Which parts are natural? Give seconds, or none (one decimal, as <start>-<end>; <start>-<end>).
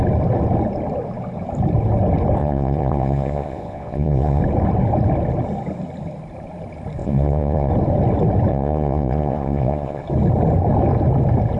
0.0-2.4; 4.4-7.0; 7.7-8.5; 10.0-11.6